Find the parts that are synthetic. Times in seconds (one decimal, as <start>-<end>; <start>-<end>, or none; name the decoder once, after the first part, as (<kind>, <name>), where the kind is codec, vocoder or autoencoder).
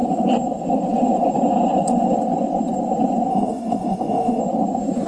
3.3-4.4 (autoencoder, DAC-VAE)